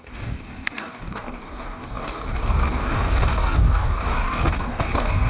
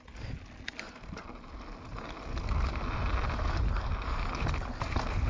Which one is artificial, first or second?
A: first